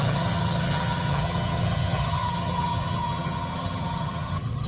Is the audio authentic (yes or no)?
no